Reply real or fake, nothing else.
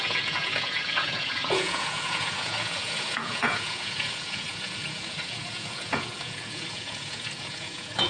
fake